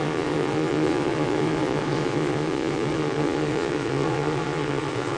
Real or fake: fake